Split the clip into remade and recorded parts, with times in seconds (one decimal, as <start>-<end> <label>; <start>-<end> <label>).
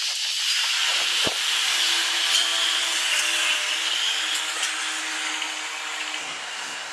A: 0.0-6.2 recorded; 6.2-6.9 remade